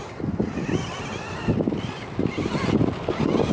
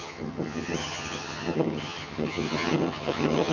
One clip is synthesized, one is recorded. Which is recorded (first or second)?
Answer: first